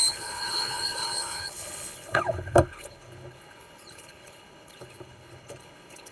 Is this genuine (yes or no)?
no